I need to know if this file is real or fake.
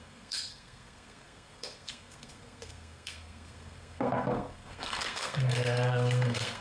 fake